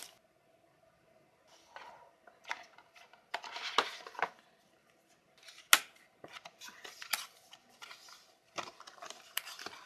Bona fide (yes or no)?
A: yes